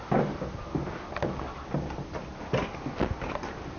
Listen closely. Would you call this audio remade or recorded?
recorded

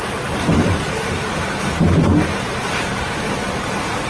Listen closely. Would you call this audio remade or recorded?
remade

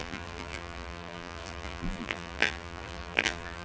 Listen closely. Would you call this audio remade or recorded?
remade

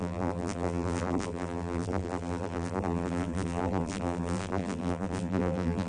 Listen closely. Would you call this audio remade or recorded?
remade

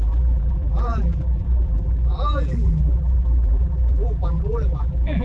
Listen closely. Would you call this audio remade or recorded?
remade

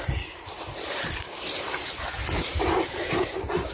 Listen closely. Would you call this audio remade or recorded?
remade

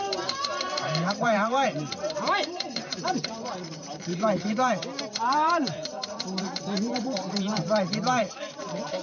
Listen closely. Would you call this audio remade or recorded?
remade